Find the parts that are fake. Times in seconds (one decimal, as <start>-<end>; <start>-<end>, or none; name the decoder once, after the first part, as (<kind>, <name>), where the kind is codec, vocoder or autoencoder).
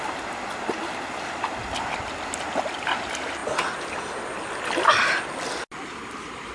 none